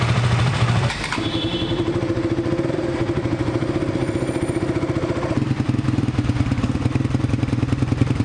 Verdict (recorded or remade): remade